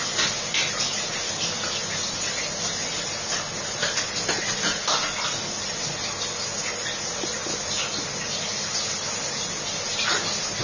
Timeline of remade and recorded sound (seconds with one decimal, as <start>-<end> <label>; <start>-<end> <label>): 0.0-10.6 recorded